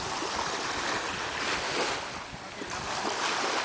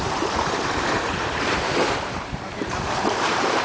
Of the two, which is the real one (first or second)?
first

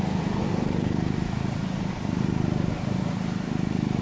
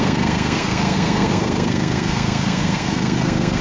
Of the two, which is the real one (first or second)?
first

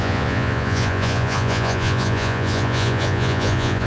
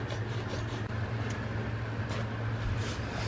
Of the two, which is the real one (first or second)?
second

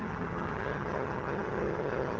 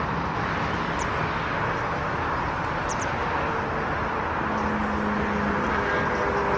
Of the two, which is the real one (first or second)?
second